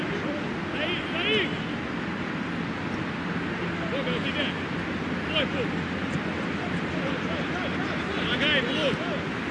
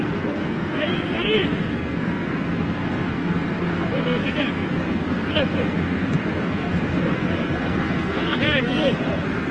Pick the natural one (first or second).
first